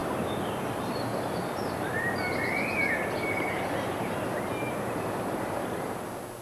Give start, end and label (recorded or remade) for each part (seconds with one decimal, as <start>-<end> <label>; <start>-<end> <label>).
0.0-6.4 recorded